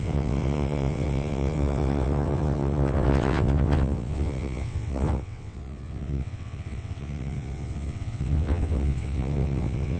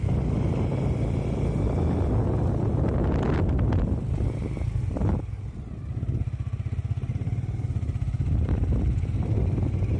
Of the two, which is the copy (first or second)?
first